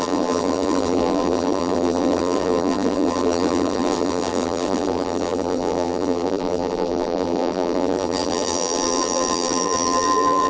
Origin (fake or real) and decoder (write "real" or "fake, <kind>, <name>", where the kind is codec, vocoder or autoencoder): fake, vocoder, BigVGAN v2